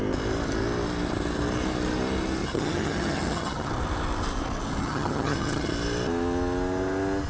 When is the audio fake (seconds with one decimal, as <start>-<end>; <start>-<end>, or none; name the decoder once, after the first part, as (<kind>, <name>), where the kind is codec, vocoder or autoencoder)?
2.4-3.7 (vocoder, HiFi-GAN); 4.8-5.7